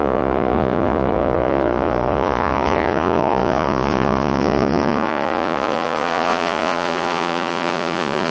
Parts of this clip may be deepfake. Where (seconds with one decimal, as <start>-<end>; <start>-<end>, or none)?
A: 0.0-8.3